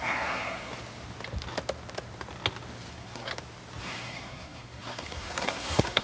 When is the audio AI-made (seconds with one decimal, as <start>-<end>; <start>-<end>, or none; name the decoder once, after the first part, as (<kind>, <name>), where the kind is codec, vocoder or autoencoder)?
0.0-0.7 (codec, SNAC); 2.9-3.3; 3.8-6.0